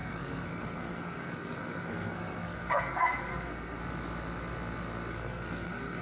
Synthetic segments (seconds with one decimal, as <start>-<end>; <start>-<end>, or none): 0.0-3.8; 5.1-6.0